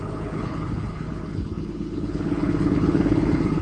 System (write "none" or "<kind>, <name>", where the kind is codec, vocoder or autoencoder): codec, HILCodec